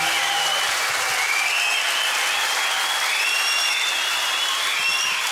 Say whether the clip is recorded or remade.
recorded